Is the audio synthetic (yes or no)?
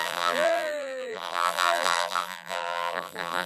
yes